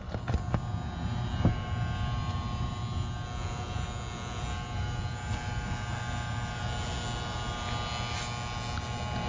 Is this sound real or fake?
real